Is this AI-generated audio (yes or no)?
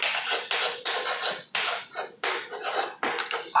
no